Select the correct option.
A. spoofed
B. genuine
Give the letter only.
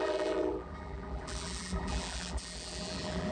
A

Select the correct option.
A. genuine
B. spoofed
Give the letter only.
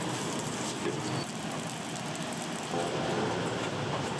A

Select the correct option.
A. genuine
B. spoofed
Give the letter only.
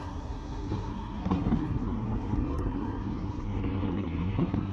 B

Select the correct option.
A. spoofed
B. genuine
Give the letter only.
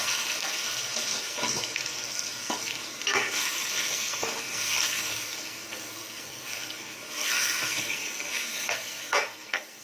A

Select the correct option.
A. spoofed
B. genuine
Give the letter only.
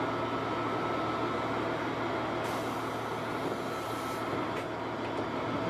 B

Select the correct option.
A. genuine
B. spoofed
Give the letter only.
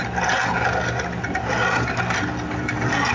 A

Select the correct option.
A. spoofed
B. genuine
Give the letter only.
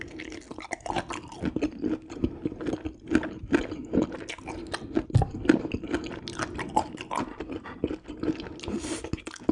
B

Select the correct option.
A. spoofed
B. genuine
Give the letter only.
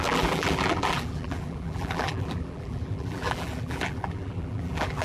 A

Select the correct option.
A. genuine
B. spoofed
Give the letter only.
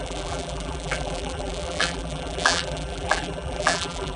B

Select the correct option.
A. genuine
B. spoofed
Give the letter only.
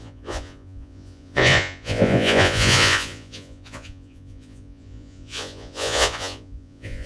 B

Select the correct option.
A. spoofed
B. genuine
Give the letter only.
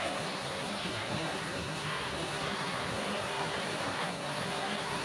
A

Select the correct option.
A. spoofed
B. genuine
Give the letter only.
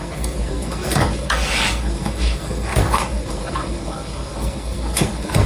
A